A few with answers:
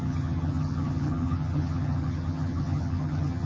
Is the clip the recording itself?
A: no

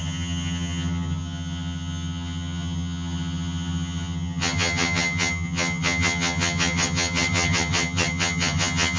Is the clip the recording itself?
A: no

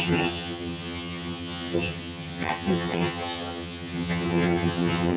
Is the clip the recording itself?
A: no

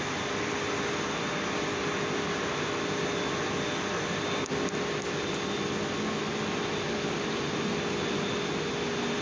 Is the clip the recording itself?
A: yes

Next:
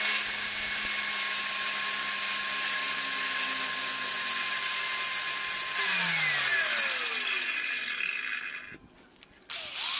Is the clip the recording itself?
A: yes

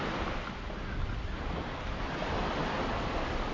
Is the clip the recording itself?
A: yes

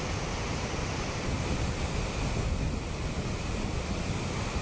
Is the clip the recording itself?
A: yes